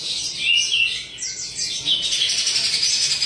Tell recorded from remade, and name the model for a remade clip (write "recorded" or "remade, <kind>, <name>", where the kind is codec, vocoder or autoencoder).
recorded